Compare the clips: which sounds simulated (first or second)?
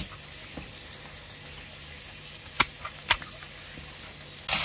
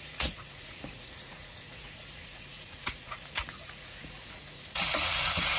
second